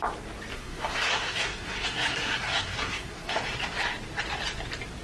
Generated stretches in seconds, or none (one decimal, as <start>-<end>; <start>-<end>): 0.5-3.4